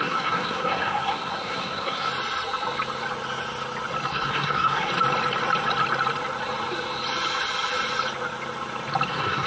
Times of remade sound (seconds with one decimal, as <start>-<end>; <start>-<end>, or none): 0.0-2.1; 4.1-4.9; 9.1-9.5